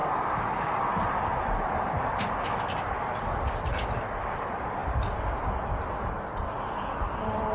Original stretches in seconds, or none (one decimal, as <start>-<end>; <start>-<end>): 0.0-7.5